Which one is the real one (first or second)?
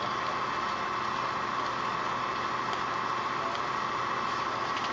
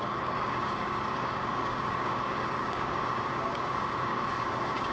first